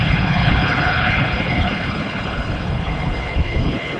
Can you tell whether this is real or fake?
fake